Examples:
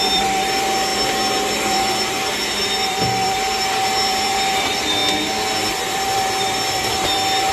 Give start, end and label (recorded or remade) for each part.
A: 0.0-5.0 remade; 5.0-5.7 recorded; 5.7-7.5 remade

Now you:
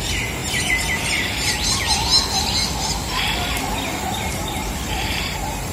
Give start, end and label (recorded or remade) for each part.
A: 0.0-2.1 remade; 2.1-4.0 recorded; 4.0-5.7 remade

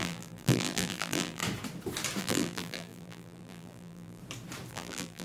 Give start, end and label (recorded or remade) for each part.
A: 0.0-1.4 remade; 1.4-2.2 recorded; 2.2-4.2 remade; 4.2-4.7 recorded; 4.7-5.2 remade

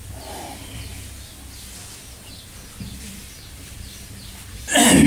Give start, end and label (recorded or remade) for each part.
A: 0.0-5.1 recorded